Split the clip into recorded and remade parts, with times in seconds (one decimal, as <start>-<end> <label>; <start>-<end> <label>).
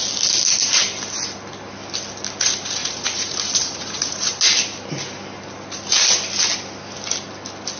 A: 0.0-2.8 recorded; 2.8-4.3 remade; 4.3-7.8 recorded